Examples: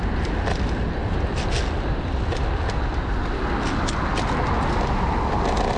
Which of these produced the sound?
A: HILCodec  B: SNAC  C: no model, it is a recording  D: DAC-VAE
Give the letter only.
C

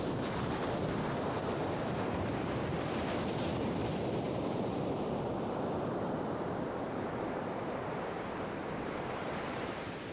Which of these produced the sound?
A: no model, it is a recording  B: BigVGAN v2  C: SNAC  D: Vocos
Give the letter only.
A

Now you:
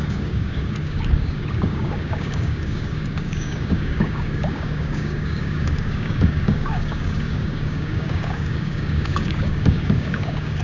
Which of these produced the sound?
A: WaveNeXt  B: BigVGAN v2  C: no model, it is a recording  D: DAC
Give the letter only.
D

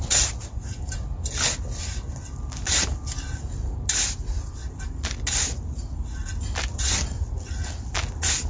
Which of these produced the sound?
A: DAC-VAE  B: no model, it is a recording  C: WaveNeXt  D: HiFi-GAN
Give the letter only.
B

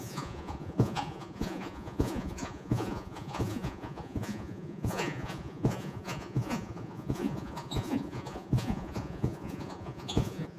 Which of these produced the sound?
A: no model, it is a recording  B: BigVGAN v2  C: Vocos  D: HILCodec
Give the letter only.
C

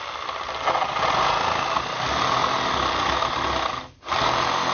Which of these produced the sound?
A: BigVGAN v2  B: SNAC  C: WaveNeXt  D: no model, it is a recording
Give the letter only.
D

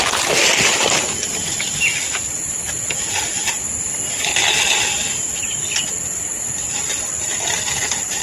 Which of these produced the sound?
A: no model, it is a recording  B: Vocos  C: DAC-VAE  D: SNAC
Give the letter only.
A